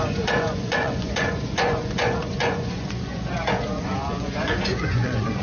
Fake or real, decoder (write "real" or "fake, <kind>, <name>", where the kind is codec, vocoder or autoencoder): fake, vocoder, Vocos